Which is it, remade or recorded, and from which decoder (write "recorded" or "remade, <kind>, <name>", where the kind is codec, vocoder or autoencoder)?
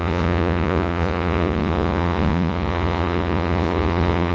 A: remade, vocoder, Vocos